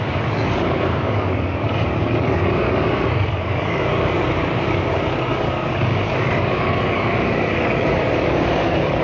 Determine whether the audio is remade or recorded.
remade